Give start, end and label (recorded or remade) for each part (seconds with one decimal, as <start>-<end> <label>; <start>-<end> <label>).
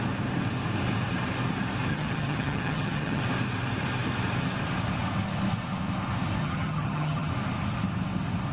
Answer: 0.0-1.9 recorded; 1.9-3.2 remade; 3.2-6.4 recorded; 6.4-7.3 remade; 7.3-8.5 recorded